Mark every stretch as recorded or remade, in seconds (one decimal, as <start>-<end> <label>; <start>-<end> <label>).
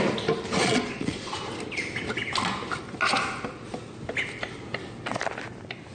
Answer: 0.0-0.6 recorded; 0.6-1.5 remade; 1.5-5.9 recorded